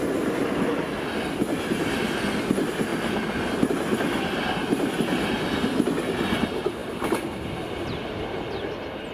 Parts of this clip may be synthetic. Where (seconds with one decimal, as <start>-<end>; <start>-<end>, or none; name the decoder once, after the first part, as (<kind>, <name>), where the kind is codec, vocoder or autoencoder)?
none